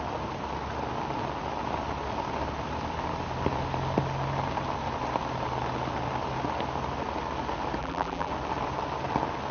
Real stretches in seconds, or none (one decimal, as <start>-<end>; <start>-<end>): 0.0-7.8; 8.3-9.5